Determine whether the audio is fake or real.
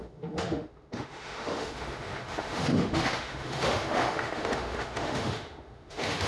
fake